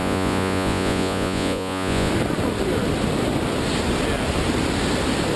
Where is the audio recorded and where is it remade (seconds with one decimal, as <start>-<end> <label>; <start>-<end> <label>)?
0.0-2.1 remade; 2.1-5.4 recorded